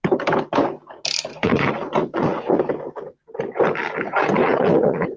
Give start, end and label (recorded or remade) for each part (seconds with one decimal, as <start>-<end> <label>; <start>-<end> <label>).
0.0-1.3 recorded; 1.3-2.6 remade; 2.6-4.4 recorded; 4.4-5.2 remade